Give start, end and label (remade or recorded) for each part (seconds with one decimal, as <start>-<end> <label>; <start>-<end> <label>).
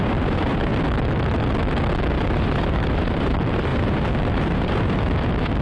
0.0-0.7 remade; 0.7-2.1 recorded; 2.1-5.6 remade